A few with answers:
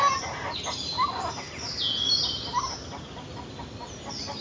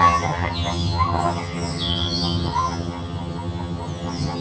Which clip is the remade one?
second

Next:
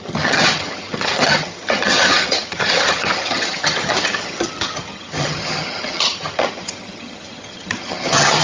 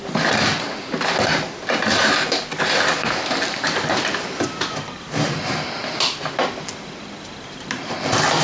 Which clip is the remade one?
first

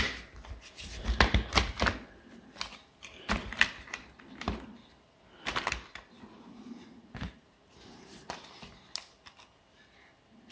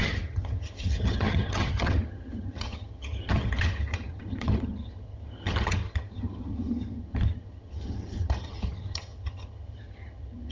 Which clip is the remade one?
second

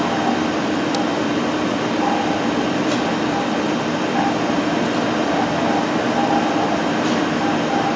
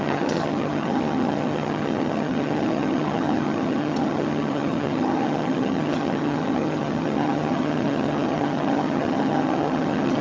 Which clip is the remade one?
second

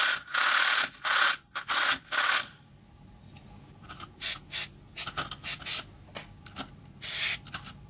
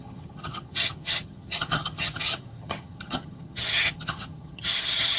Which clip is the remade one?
second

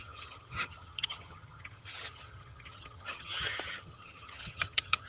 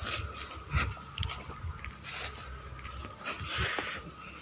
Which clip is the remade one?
first